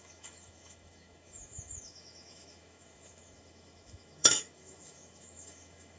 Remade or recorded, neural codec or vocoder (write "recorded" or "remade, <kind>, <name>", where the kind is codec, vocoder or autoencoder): remade, autoencoder, DAC-VAE